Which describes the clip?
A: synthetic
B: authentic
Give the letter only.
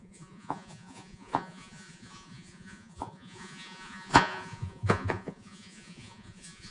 A